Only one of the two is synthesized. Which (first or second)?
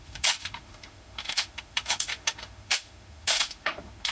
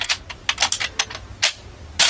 first